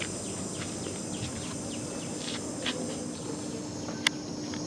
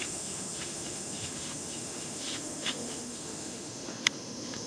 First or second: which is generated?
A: second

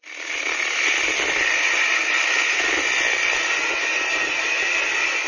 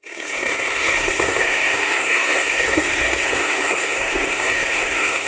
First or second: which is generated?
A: second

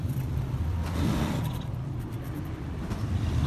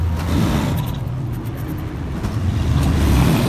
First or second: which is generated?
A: first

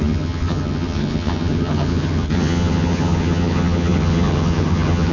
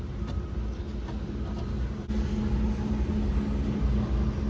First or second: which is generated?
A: first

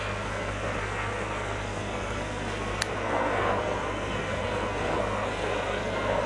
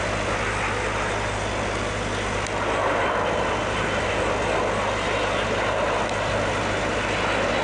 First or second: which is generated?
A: first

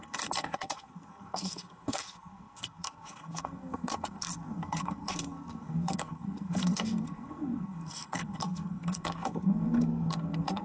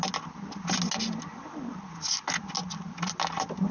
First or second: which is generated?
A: first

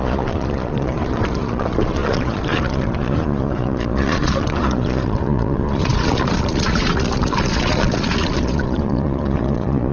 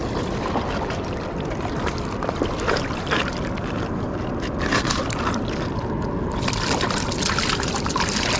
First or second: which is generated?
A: first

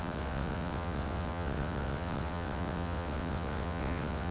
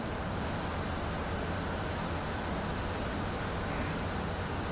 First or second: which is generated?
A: first